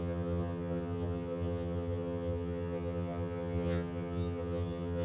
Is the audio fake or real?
fake